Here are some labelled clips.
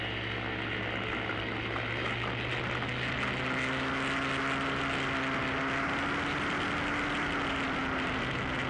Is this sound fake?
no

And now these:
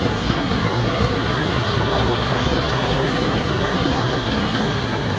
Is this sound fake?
yes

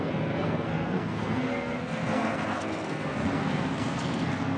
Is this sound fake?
yes